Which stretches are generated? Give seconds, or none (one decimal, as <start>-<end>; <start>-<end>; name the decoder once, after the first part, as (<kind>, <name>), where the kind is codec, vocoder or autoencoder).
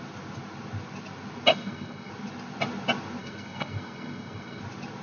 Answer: 1.5-2.1 (codec, SNAC); 3.2-4.6